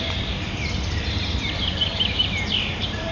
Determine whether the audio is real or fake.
fake